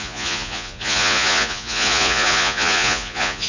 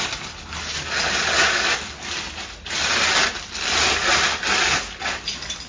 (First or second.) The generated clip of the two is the first